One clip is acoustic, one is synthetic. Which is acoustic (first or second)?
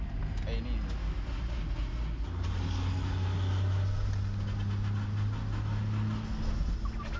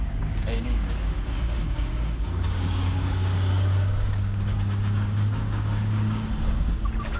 first